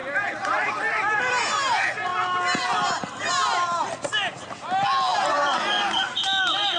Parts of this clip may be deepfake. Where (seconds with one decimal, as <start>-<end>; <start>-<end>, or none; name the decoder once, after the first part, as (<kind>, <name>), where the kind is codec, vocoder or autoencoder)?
5.1-6.2 (vocoder, BigVGAN v2)